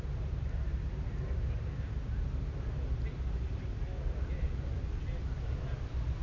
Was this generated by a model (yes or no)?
no